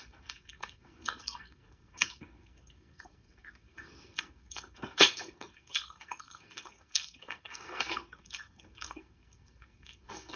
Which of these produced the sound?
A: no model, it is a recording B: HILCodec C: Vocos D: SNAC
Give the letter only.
D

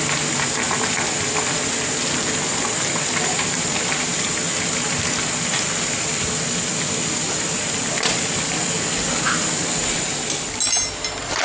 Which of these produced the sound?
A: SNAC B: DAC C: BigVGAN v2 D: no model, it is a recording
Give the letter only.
D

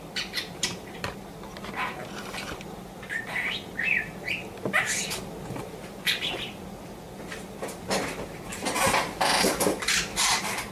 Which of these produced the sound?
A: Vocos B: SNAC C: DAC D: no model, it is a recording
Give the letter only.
D